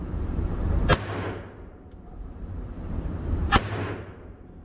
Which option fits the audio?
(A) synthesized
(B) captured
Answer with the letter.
A